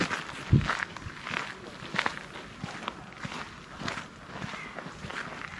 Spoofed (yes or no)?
no